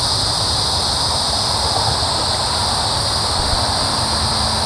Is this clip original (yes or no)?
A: yes